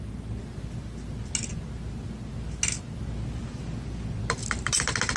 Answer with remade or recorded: recorded